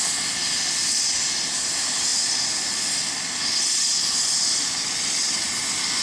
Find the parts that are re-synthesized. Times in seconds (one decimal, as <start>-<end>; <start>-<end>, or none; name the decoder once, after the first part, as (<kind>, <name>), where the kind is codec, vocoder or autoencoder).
none

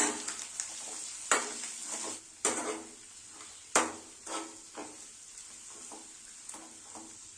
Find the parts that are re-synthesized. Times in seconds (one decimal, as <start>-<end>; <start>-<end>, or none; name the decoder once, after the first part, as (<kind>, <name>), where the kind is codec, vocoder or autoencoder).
none

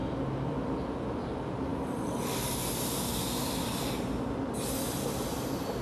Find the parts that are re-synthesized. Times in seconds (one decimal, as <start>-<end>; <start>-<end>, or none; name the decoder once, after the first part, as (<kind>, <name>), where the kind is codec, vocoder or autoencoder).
0.5-5.8 (vocoder, BigVGAN v2)

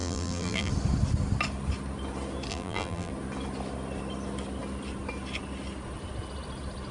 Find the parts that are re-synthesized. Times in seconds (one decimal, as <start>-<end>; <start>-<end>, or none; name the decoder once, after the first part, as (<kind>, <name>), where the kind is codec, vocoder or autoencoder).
0.0-0.7 (vocoder, BigVGAN v2); 2.5-3.1

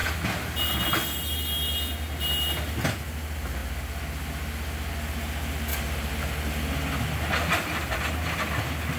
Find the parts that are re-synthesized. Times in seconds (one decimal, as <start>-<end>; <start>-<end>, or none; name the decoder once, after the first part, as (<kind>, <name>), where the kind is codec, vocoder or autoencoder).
5.7-6.5 (vocoder, BigVGAN v2)

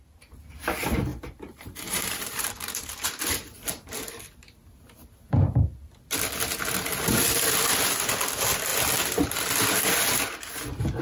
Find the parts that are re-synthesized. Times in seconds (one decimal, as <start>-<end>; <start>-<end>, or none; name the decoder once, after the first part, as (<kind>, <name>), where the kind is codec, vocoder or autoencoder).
1.1-3.1 (vocoder, BigVGAN v2)

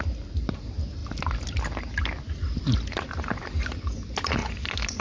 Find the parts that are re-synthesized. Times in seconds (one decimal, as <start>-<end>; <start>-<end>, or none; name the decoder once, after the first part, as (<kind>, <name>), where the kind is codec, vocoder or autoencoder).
none